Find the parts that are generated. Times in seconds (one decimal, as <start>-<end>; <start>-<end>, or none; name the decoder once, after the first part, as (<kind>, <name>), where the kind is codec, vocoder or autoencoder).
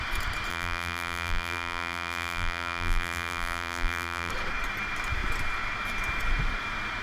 0.5-4.3 (vocoder, BigVGAN v2)